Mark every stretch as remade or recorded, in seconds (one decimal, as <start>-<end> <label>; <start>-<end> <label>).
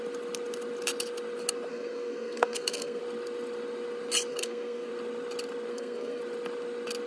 0.0-1.7 recorded; 1.7-3.0 remade; 3.0-4.3 recorded; 4.3-4.9 remade; 4.9-5.7 recorded; 5.7-6.2 remade; 6.2-7.1 recorded